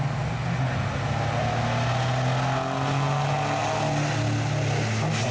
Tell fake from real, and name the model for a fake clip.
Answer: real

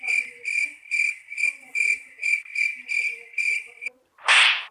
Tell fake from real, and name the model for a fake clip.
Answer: real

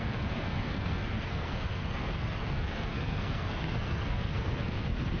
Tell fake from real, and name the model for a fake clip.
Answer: fake, codec, SNAC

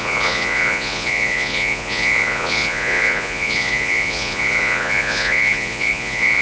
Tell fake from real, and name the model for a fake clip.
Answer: fake, vocoder, Vocos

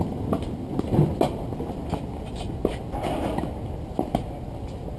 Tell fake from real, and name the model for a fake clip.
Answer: real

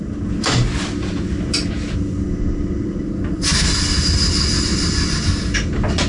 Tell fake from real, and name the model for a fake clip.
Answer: real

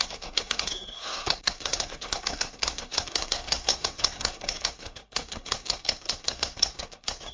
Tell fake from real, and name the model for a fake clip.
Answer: fake, codec, SNAC